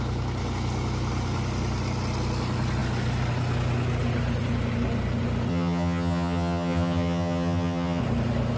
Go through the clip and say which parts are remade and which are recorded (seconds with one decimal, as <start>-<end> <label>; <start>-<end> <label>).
0.0-5.5 recorded; 5.5-8.0 remade; 8.0-8.6 recorded